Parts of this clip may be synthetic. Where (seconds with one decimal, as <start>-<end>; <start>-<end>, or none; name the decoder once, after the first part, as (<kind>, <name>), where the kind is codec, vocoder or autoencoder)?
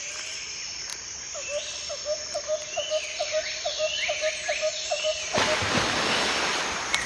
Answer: 0.9-4.3 (vocoder, BigVGAN v2)